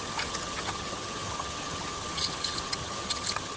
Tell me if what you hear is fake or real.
fake